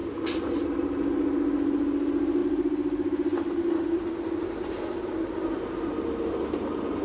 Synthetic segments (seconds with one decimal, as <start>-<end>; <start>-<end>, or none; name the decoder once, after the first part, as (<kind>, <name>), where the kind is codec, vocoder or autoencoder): none